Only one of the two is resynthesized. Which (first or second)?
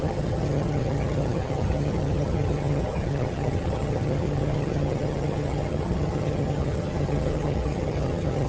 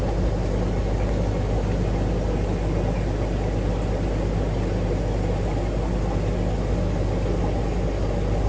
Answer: first